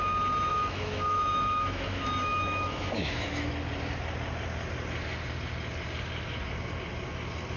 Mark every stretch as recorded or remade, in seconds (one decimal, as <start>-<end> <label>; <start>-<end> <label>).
0.0-0.5 recorded; 0.5-3.5 remade; 3.5-7.6 recorded